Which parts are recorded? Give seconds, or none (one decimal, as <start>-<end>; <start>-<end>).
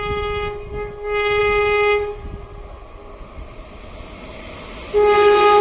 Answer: 0.0-5.6